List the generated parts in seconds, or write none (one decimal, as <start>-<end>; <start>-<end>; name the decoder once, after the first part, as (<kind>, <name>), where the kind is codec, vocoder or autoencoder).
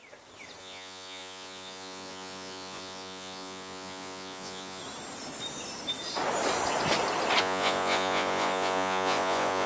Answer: 0.6-4.8 (vocoder, Vocos); 7.4-9.7